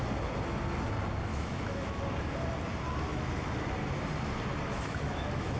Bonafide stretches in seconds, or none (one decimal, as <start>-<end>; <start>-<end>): 0.0-1.3; 2.0-3.1; 3.6-4.7